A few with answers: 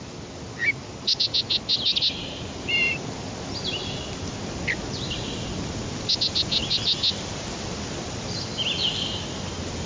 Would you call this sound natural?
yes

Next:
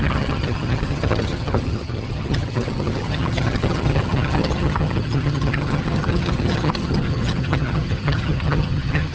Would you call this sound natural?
no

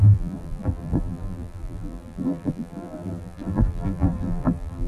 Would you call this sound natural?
no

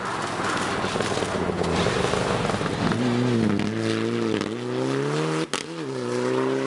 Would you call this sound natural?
yes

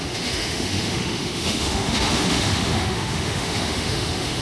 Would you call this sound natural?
no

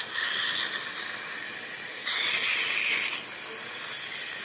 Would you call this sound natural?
yes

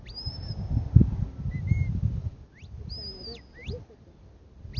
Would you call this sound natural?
yes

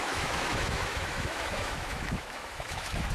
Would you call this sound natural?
no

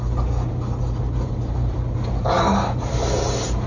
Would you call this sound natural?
yes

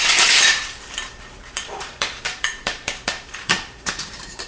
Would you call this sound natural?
no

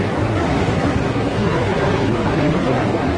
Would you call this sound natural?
no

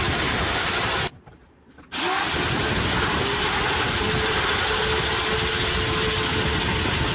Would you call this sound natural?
yes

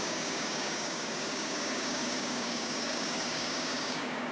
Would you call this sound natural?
no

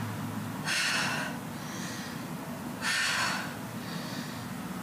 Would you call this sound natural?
yes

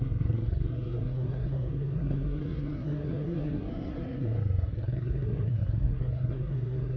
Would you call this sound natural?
no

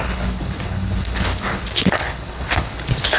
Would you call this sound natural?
no